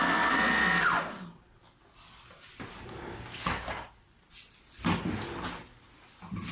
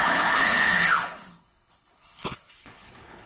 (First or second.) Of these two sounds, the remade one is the second